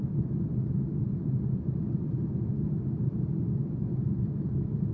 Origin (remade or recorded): recorded